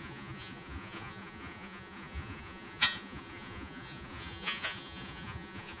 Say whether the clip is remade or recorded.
remade